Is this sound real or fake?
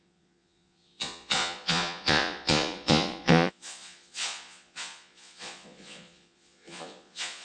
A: fake